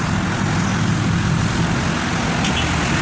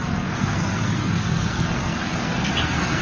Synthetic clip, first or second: second